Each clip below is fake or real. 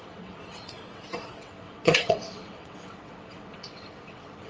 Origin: fake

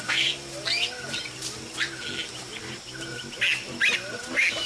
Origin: real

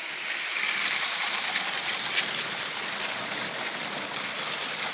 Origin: real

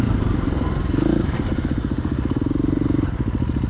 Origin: real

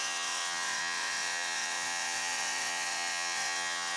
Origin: fake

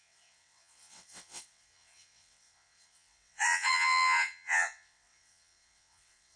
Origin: fake